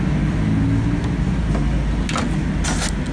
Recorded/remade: recorded